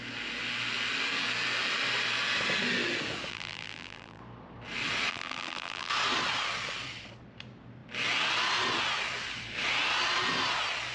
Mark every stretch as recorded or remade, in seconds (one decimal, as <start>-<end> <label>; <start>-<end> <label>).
0.0-3.3 recorded; 3.3-4.2 remade; 4.2-5.1 recorded; 5.1-5.9 remade; 5.9-10.9 recorded